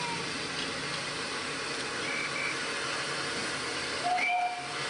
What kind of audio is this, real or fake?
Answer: real